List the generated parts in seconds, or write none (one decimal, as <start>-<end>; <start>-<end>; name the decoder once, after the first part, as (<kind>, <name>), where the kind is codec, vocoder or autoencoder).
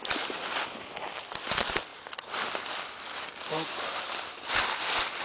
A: none